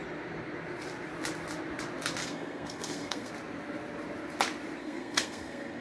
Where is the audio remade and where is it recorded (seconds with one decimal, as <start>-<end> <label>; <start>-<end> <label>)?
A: 0.0-2.2 recorded; 2.2-3.3 remade; 3.3-4.8 recorded; 4.8-5.8 remade